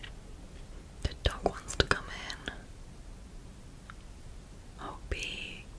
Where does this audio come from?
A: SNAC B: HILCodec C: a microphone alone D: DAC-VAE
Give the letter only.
C